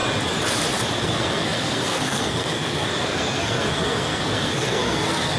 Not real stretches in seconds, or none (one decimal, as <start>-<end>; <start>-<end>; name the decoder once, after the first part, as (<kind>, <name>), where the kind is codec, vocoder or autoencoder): 1.0-5.4 (codec, SNAC)